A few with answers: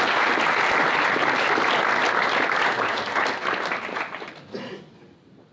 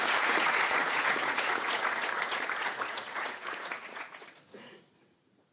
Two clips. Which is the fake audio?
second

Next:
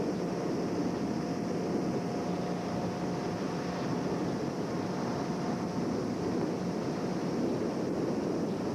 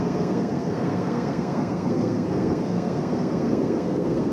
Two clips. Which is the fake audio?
second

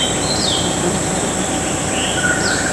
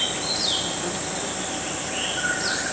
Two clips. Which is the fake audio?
first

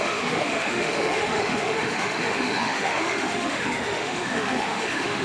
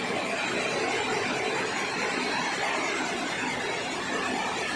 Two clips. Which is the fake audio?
first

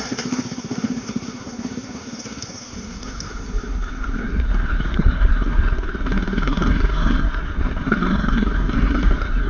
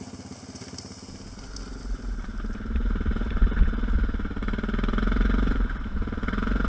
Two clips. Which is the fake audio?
first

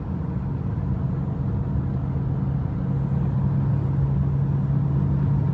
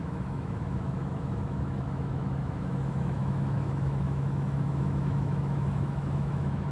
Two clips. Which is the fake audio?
second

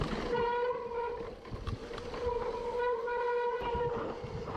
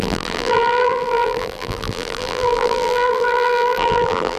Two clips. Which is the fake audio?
second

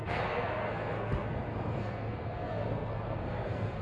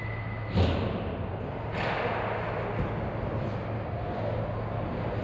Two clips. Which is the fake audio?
first